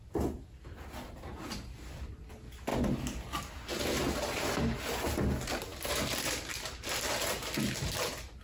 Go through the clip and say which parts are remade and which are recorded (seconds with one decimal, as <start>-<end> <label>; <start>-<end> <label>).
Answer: 0.0-8.4 recorded